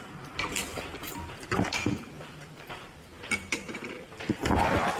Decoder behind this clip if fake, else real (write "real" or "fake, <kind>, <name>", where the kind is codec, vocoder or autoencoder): real